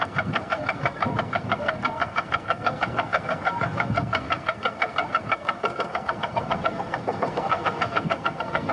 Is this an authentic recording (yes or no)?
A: no